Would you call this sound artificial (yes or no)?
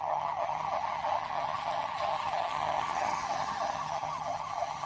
yes